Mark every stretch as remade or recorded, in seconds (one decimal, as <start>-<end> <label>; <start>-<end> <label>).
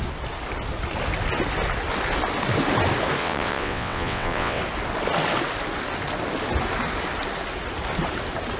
0.0-3.2 recorded; 3.2-4.6 remade; 4.6-8.6 recorded